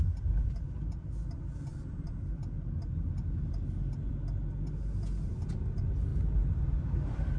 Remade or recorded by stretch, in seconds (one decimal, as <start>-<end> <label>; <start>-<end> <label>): 0.0-7.4 recorded